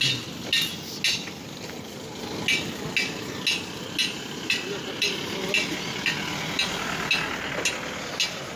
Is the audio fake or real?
real